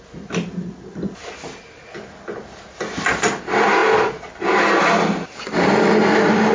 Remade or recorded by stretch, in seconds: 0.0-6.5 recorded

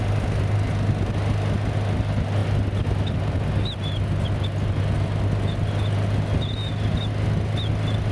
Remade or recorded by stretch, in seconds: 0.0-8.1 recorded

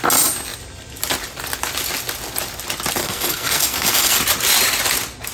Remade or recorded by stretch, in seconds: 0.0-3.0 recorded; 3.0-4.2 remade; 4.2-5.3 recorded